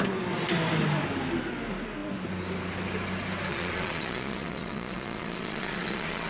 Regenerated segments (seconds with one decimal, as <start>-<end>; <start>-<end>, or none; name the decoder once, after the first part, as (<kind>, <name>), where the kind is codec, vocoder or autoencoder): 3.5-6.3 (vocoder, Vocos)